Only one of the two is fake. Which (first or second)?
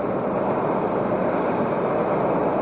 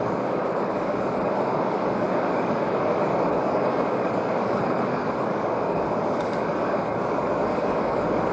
second